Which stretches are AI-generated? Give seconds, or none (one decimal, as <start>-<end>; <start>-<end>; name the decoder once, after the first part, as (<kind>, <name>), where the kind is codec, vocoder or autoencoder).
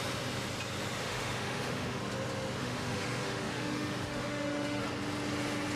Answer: 1.0-2.0 (autoencoder, DAC-VAE); 2.6-4.8